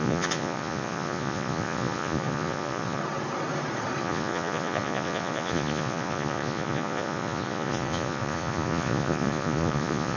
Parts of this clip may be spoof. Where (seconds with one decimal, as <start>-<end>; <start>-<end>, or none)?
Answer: 0.0-3.0; 4.0-10.2